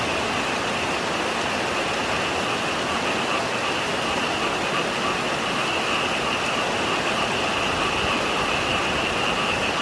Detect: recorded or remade recorded